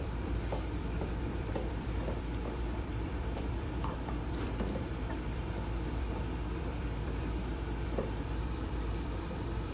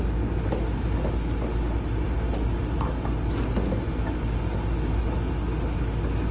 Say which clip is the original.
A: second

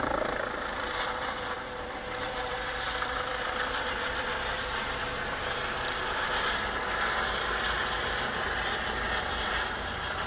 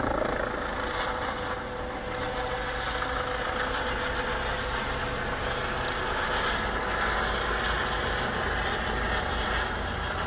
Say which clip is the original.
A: second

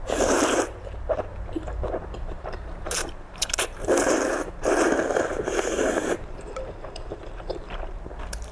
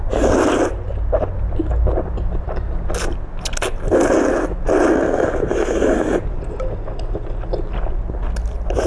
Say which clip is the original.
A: second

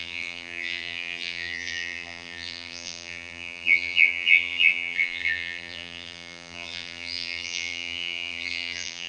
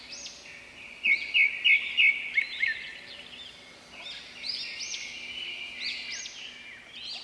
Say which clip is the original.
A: second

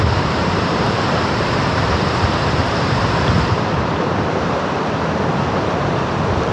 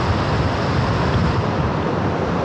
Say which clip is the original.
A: second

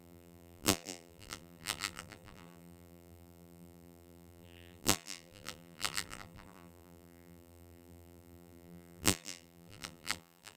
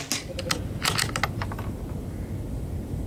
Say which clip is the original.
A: second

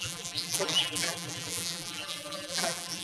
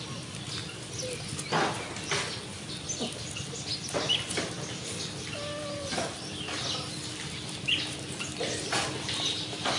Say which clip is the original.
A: second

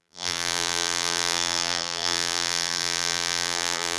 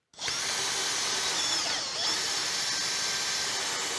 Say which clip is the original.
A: second